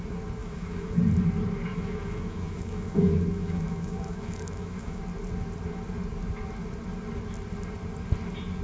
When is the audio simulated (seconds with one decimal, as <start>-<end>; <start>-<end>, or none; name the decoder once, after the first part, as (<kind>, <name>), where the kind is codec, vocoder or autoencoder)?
0.4-1.0 (autoencoder, DAC-VAE); 1.7-5.0